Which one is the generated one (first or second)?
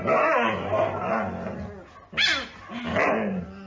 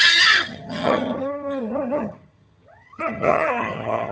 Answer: second